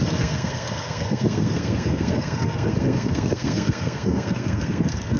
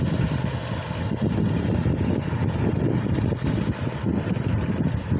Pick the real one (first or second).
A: second